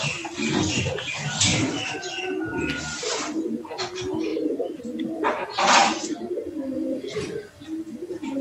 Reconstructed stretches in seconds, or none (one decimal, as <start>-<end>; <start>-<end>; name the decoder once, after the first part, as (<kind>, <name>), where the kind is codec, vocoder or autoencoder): none